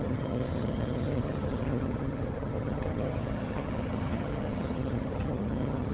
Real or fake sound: fake